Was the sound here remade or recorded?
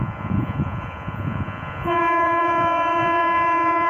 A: remade